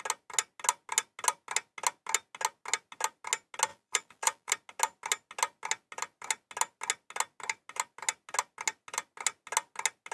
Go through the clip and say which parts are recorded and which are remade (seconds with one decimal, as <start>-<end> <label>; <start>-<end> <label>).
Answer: 0.0-3.7 recorded; 3.7-4.5 remade; 4.5-10.1 recorded